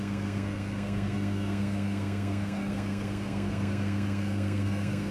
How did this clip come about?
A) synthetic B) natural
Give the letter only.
A